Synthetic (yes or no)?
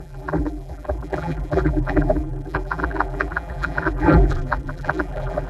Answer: yes